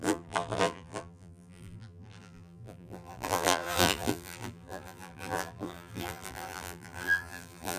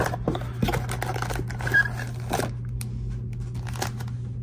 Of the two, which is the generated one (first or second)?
first